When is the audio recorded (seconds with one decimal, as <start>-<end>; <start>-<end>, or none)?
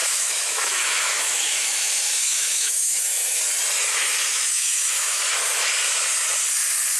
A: 3.4-4.3; 5.2-7.0